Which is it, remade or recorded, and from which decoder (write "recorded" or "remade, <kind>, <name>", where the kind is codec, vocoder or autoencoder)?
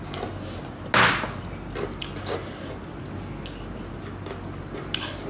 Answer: recorded